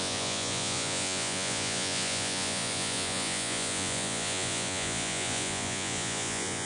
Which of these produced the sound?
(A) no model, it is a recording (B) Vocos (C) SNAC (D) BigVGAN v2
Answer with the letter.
B